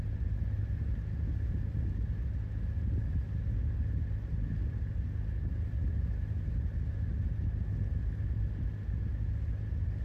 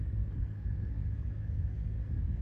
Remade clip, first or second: second